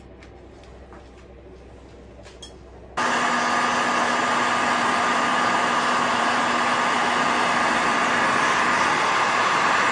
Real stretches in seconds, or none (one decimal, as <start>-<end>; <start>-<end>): 0.0-9.9